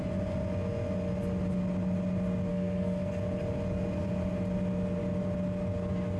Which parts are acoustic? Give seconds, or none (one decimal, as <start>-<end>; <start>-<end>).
0.0-2.5; 3.1-6.2